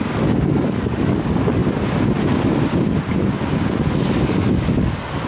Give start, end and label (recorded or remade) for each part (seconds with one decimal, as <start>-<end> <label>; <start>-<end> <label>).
0.0-1.6 remade; 1.6-4.1 recorded; 4.1-5.3 remade